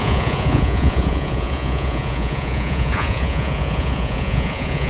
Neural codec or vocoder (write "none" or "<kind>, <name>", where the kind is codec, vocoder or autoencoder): vocoder, Vocos